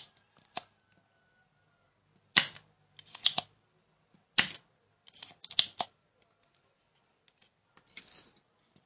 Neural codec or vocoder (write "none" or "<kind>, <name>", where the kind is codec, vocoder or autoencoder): none